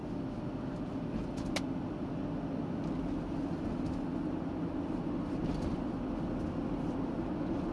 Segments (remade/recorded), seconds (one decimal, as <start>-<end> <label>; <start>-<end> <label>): 0.0-7.7 recorded